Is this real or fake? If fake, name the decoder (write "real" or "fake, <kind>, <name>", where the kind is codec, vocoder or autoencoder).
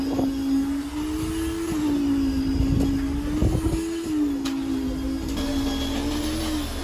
real